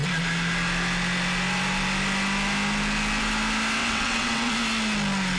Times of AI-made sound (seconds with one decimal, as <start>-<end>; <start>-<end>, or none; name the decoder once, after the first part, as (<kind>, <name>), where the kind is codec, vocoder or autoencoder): 3.8-4.5 (vocoder, WaveNeXt)